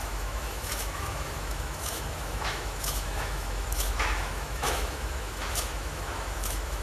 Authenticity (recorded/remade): remade